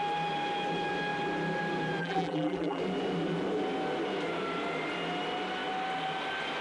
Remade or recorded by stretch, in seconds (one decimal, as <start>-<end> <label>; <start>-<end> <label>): 0.0-2.0 recorded; 2.0-2.8 remade; 2.8-6.6 recorded